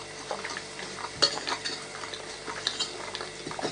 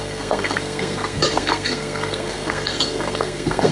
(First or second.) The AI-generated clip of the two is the second